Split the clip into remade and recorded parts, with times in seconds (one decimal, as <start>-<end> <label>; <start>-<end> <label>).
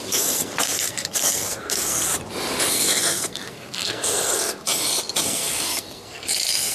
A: 0.0-2.1 remade; 2.1-2.7 recorded; 2.7-4.7 remade; 4.7-5.2 recorded; 5.2-6.7 remade